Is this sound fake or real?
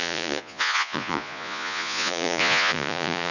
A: fake